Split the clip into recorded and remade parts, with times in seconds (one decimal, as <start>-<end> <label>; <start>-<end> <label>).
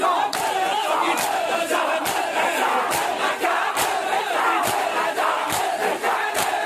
0.0-6.7 recorded